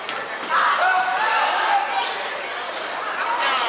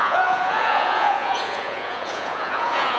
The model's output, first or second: second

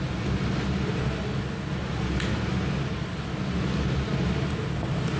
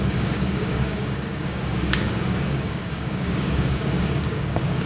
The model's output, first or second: second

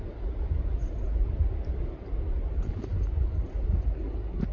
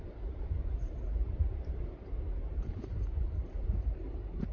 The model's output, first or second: second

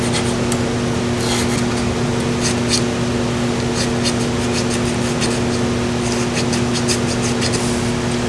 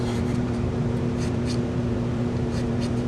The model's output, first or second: second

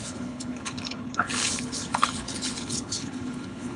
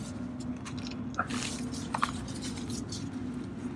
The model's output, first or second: first